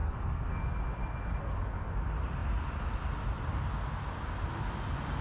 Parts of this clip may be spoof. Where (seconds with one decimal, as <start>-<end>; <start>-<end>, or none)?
0.0-0.6